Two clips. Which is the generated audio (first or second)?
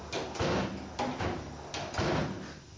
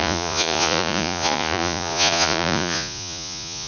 second